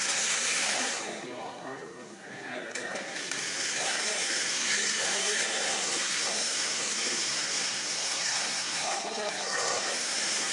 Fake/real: fake